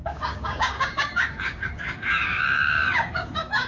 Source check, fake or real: fake